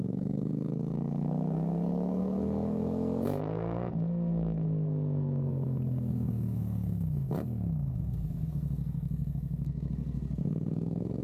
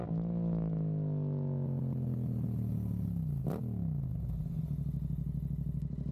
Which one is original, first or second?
second